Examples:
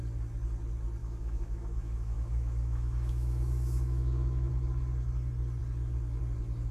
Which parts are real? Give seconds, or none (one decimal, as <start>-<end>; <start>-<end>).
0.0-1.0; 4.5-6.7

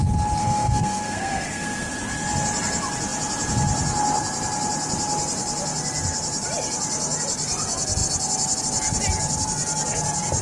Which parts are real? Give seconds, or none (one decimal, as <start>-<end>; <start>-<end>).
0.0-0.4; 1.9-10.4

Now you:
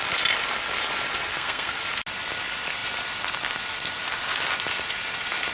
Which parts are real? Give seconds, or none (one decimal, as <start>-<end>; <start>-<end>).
0.0-1.3; 1.8-5.5